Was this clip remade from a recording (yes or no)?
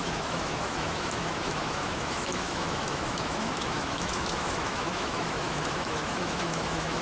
yes